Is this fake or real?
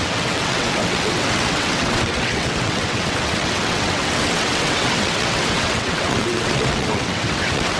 fake